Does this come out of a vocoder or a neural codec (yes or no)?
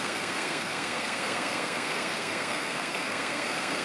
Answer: yes